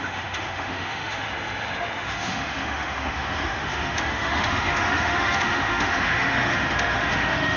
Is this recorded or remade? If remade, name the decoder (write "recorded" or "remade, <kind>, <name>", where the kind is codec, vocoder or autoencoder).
remade, autoencoder, DAC-VAE